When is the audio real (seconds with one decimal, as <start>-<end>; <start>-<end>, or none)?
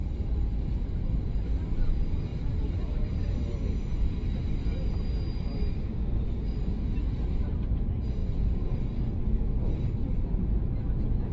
1.1-2.3; 3.8-10.0; 10.5-11.3